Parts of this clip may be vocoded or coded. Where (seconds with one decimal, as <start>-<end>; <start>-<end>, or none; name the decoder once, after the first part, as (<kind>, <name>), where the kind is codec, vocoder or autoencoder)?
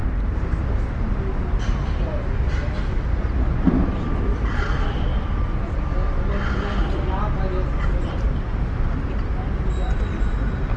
0.0-0.6 (vocoder, BigVGAN v2); 5.1-5.6